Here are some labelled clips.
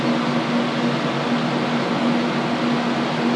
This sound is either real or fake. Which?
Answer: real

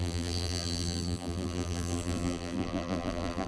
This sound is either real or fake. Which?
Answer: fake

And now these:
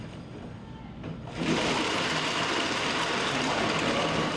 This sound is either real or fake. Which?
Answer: fake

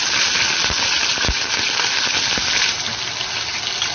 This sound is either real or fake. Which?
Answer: real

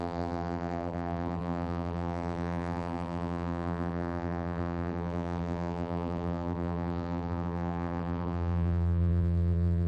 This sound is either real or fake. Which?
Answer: fake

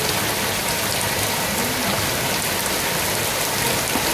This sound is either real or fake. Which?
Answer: real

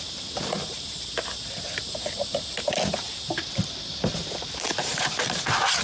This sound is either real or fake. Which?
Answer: fake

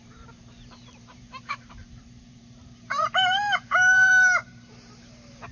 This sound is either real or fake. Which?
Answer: fake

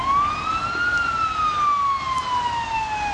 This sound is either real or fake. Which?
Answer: real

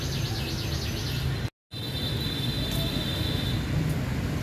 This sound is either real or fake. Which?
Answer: real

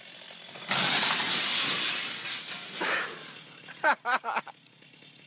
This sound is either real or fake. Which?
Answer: real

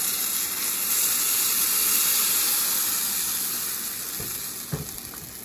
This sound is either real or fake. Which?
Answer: real